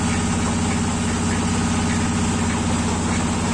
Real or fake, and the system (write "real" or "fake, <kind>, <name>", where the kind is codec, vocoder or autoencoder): real